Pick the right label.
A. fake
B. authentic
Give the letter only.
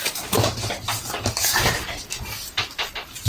A